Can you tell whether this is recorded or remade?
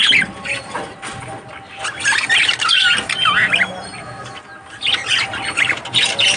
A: recorded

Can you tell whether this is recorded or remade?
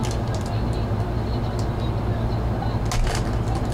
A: recorded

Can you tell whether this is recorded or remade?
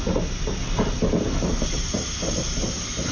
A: recorded